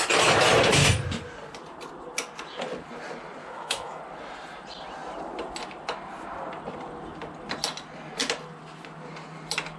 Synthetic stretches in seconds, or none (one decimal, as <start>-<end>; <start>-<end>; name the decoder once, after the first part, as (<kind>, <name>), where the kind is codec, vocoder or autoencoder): 3.4-4.0 (autoencoder, DAC-VAE)